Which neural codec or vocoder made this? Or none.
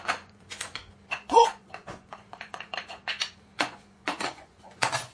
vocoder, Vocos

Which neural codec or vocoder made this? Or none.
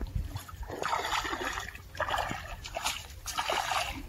none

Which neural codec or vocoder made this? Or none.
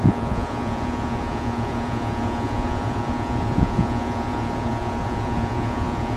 vocoder, Vocos